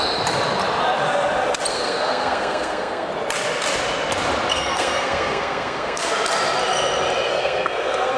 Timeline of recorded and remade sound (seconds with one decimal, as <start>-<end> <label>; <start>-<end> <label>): 0.0-1.7 recorded; 1.7-3.1 remade; 3.1-4.5 recorded; 4.5-6.1 remade; 6.1-7.3 recorded; 7.3-8.2 remade